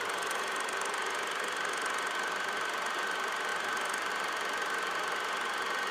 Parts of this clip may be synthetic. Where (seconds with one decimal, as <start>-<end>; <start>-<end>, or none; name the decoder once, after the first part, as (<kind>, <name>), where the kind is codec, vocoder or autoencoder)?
none